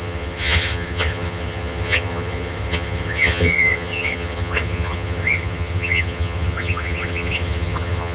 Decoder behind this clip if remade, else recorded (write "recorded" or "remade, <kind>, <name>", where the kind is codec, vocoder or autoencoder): remade, vocoder, HiFi-GAN